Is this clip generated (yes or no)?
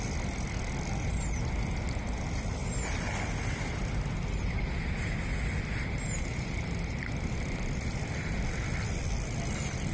no